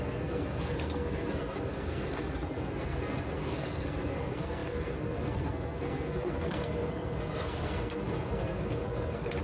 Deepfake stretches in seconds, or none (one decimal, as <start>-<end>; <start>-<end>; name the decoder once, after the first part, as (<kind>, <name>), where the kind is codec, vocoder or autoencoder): 0.0-9.4 (codec, SNAC)